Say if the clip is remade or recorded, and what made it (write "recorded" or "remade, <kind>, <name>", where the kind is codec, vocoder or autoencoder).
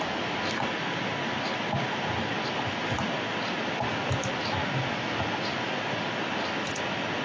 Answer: recorded